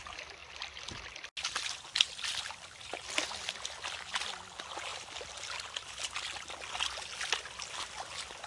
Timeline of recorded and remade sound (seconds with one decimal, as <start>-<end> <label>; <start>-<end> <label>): 0.0-8.5 recorded